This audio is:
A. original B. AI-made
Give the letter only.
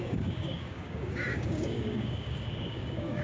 B